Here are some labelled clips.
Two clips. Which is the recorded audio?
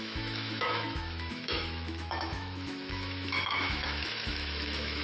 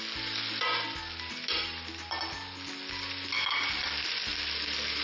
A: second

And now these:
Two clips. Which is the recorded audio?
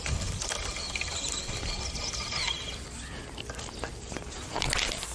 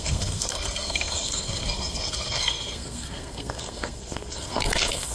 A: first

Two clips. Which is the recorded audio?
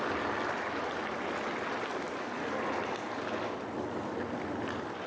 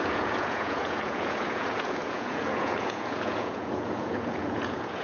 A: first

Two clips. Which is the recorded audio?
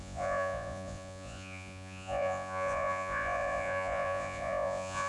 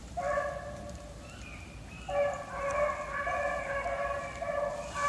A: second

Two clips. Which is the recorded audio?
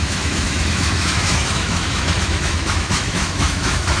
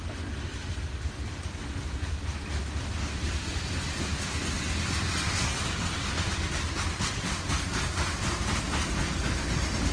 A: second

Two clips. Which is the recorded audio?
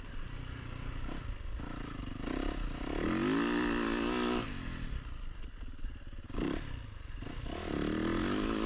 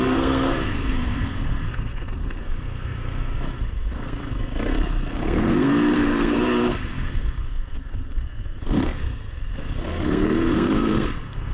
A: first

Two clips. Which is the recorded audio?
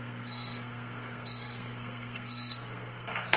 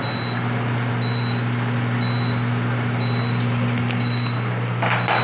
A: second